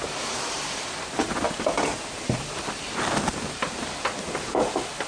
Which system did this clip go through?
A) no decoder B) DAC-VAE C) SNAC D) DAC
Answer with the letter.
A